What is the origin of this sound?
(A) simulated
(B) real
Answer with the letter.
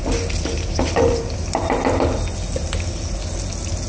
B